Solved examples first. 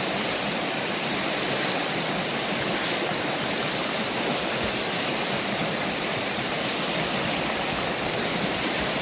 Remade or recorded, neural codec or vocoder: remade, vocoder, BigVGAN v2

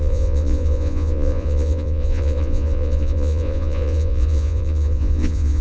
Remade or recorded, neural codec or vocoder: remade, vocoder, Vocos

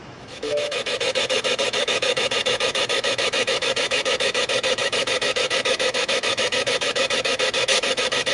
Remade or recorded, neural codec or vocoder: remade, autoencoder, DAC-VAE